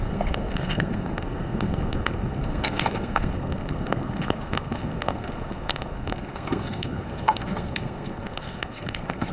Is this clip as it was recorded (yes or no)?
no